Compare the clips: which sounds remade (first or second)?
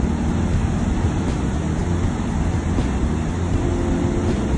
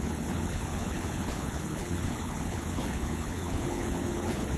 second